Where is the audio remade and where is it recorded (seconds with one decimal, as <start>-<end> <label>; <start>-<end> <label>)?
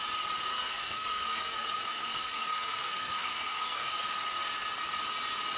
0.0-0.5 recorded; 0.5-3.9 remade; 3.9-5.6 recorded